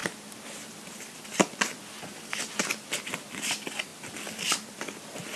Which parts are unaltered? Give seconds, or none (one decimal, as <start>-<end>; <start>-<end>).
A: 0.0-5.4